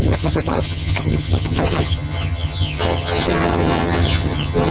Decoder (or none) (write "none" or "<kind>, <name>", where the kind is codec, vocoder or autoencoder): vocoder, HiFi-GAN